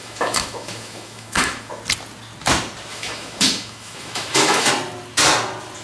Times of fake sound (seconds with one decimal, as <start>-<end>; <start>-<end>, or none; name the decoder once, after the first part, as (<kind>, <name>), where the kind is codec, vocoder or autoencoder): 0.0-1.8 (autoencoder, DAC-VAE); 2.9-4.7